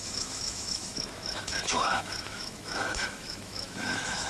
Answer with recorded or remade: remade